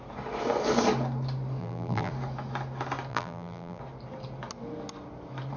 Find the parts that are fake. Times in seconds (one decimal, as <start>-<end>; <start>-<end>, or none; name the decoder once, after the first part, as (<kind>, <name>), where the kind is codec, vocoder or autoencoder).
1.6-2.1 (vocoder, BigVGAN v2); 3.1-3.8